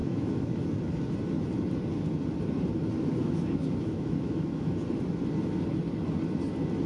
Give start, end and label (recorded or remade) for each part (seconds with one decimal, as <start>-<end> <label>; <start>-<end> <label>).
0.0-0.6 remade; 0.6-3.2 recorded; 3.2-4.7 remade; 4.7-6.9 recorded